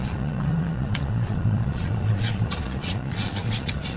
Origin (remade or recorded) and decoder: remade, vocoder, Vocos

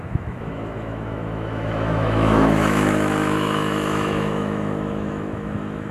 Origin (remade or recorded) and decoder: remade, autoencoder, DAC-VAE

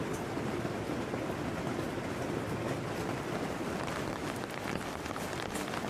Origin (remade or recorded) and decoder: recorded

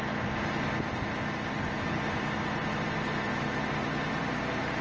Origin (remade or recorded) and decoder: recorded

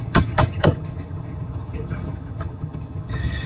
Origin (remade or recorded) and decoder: remade, vocoder, HiFi-GAN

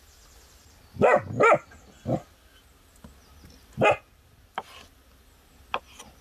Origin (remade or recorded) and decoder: recorded